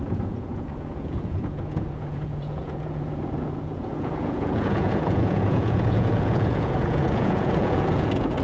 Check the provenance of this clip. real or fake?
fake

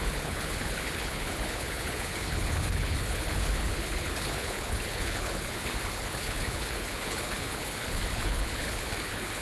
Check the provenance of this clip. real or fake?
fake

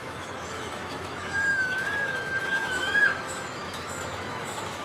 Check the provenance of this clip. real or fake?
fake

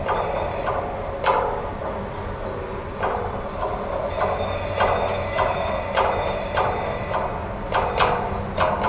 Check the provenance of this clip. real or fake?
real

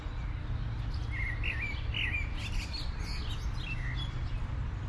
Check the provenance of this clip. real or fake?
real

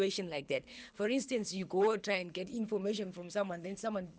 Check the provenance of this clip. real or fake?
fake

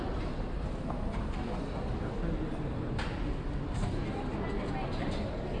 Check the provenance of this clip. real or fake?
real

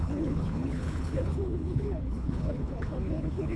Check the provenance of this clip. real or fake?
fake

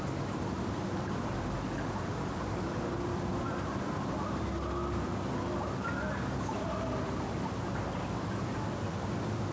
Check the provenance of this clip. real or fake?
real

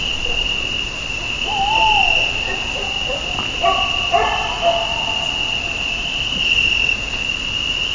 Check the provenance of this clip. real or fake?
real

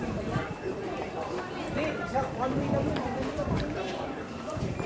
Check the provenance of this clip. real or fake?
fake